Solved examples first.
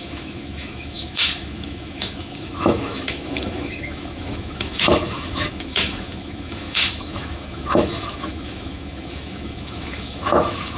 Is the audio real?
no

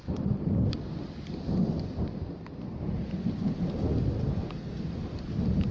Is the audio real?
yes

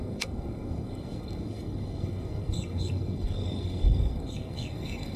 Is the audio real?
no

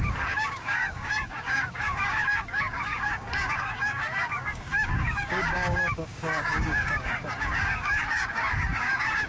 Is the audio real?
no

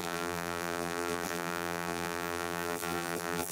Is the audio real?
no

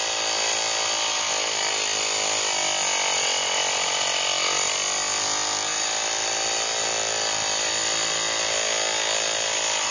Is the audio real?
yes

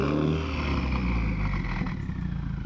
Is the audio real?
yes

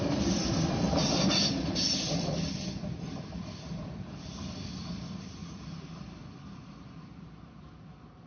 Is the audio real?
no